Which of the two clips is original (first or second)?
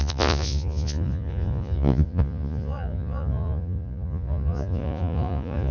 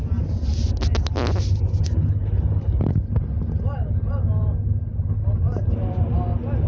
second